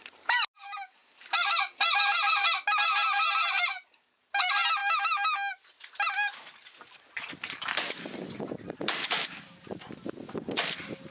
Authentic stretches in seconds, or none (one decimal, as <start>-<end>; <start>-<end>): 0.0-11.1